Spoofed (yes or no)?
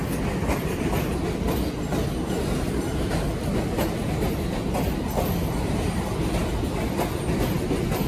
no